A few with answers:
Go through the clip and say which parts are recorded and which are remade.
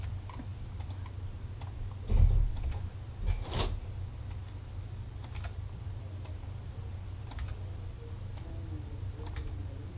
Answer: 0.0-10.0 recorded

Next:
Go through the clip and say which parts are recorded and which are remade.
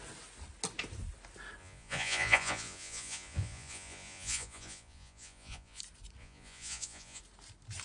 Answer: 0.0-1.6 recorded; 1.6-5.8 remade; 5.8-6.2 recorded; 6.2-7.2 remade; 7.2-7.8 recorded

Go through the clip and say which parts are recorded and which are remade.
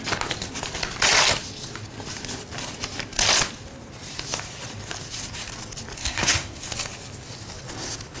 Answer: 0.0-6.0 recorded; 6.0-6.6 remade; 6.6-8.2 recorded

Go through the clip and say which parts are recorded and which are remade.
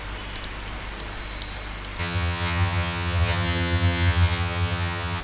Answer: 0.0-2.0 recorded; 2.0-5.2 remade